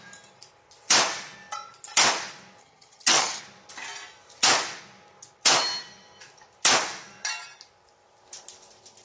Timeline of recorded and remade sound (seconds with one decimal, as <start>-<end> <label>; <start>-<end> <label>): 0.0-2.6 recorded; 2.6-3.4 remade; 3.4-9.0 recorded